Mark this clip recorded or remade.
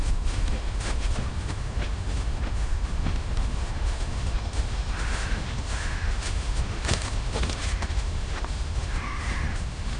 remade